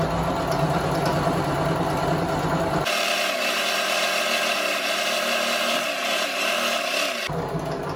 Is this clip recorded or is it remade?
recorded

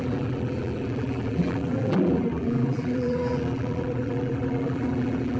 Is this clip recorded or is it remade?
remade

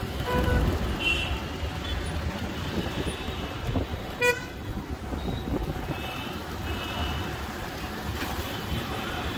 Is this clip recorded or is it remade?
remade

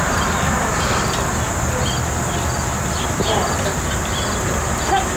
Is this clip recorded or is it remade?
recorded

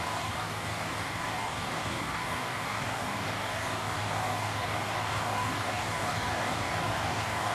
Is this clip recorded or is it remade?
remade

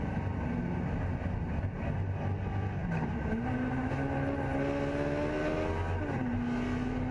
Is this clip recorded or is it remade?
recorded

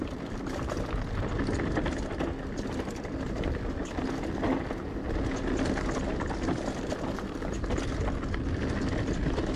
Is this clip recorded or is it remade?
recorded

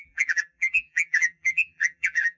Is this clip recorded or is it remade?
remade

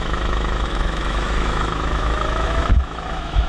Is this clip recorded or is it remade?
remade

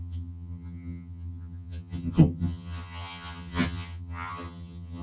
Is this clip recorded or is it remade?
remade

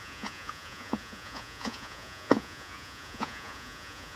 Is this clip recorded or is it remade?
remade